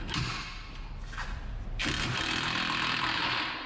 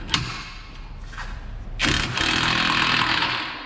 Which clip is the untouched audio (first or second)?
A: second